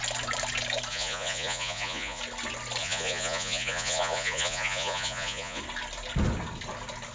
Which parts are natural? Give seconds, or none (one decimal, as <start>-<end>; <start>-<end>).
0.0-0.9; 2.2-2.8; 5.6-7.1